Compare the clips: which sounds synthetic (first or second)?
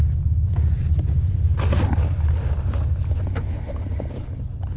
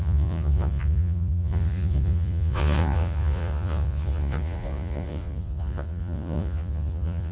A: second